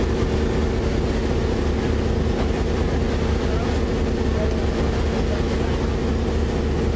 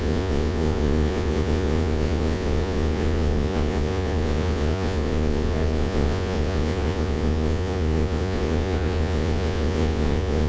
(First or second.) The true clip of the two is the first